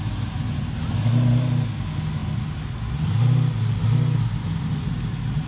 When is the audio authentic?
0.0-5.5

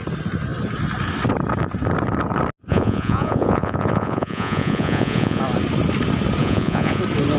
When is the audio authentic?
0.0-2.7; 5.4-6.4; 7.0-7.4

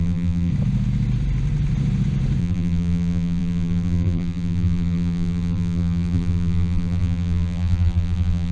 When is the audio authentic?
0.5-2.4

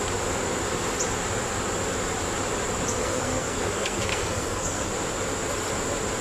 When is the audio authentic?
0.0-3.0; 4.9-6.2

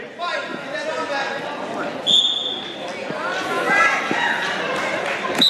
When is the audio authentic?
0.5-1.2; 2.4-4.0

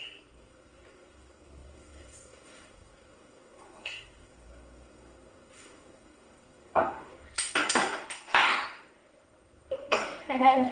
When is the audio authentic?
none

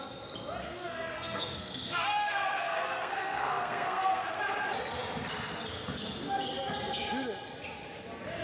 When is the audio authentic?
0.0-0.6; 4.4-8.4

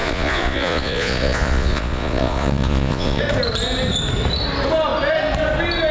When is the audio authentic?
3.2-5.9